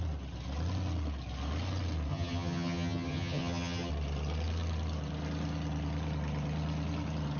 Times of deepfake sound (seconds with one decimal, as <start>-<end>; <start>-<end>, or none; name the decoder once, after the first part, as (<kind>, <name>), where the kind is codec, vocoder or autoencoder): 2.1-3.9 (vocoder, HiFi-GAN)